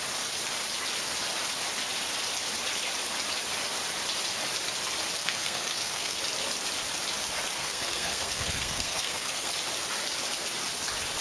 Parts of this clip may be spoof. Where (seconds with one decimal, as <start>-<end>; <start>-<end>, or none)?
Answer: 5.2-6.2; 7.6-9.5